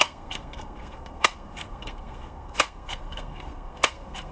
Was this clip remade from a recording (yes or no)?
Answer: yes